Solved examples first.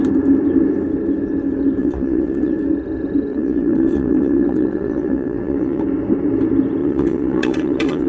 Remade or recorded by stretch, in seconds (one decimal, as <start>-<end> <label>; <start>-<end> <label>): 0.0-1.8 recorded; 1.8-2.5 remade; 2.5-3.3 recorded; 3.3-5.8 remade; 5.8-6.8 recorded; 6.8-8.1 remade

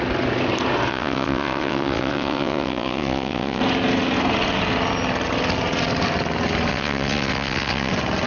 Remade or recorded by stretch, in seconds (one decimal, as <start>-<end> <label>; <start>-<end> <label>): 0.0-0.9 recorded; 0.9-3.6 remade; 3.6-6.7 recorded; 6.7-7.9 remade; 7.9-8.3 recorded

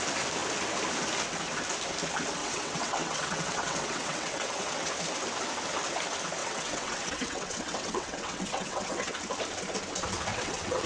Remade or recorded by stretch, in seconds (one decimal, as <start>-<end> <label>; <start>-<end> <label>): 0.0-2.4 recorded; 2.4-4.9 remade; 4.9-6.4 recorded; 6.4-9.1 remade; 9.1-10.3 recorded; 10.3-10.9 remade